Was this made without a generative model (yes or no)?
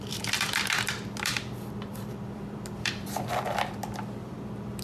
no